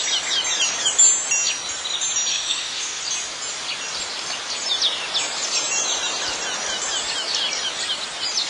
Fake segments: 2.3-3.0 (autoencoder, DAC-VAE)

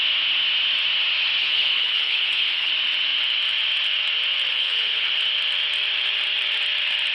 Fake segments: 1.4-2.7 (codec, HILCodec); 4.5-5.1

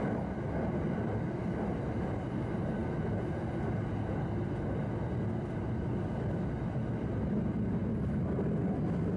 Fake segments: none

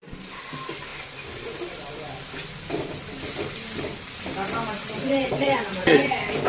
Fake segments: 4.8-6.1 (vocoder, WaveNeXt)

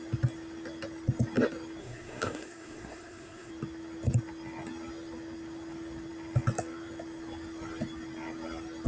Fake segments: 1.8-3.5 (codec, SNAC)